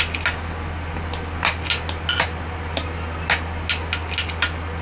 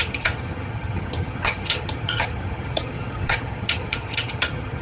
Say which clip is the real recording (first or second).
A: first